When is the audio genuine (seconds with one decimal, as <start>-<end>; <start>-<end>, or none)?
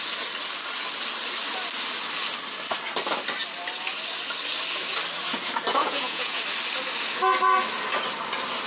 0.0-5.8; 6.4-8.7